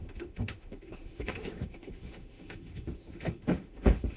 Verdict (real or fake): fake